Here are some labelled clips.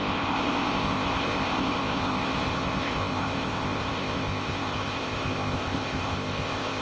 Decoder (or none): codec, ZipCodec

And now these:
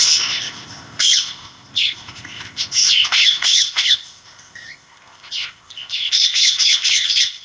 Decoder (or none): codec, ZipCodec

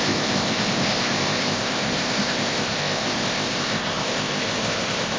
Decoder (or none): codec, ZipCodec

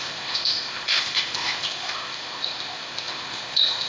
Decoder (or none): codec, ZipCodec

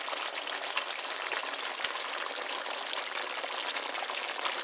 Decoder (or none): none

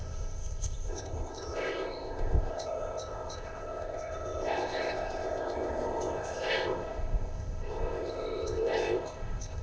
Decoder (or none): codec, ZipCodec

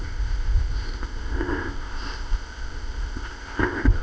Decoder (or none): codec, ZipCodec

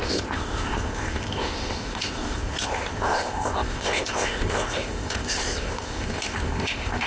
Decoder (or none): codec, ZipCodec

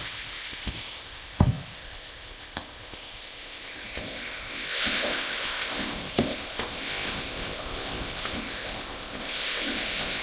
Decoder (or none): codec, ZipCodec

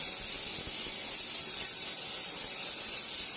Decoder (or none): none